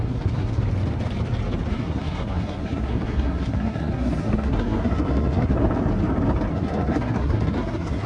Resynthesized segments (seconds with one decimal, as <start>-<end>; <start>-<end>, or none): 0.0-0.6; 1.7-5.5; 6.5-8.1